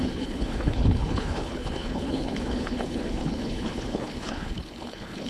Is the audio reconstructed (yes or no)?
yes